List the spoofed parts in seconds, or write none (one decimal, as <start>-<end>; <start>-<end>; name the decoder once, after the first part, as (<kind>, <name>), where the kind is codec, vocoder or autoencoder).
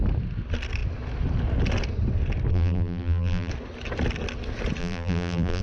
2.5-3.5 (vocoder, BigVGAN v2); 4.8-5.6